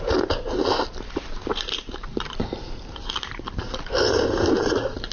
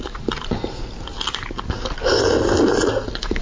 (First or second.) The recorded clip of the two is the second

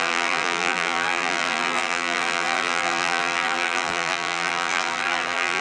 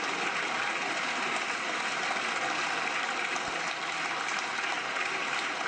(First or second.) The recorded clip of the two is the second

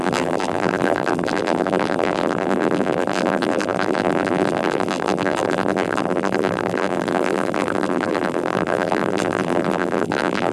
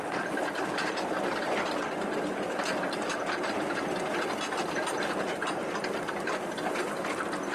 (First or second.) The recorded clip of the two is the second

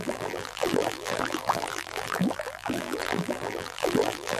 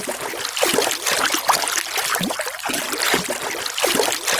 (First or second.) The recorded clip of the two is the second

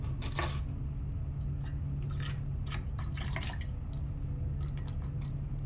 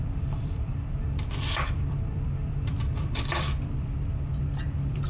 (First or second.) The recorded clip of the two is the first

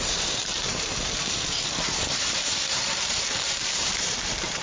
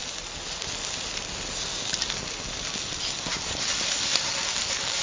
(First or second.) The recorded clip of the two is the second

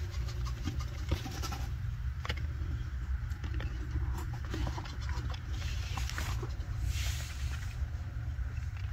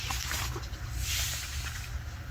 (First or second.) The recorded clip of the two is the second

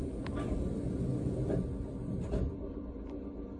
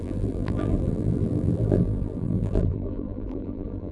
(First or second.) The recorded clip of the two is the first